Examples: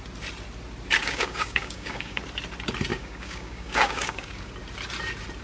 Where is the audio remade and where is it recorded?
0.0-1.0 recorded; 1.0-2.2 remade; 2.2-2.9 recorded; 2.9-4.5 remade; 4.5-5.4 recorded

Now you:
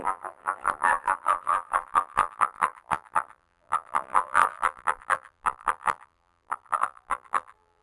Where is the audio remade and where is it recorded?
0.0-7.8 remade

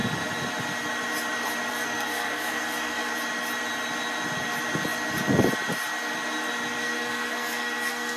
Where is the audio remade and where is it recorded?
0.0-1.7 recorded; 1.7-3.1 remade; 3.1-6.8 recorded; 6.8-8.2 remade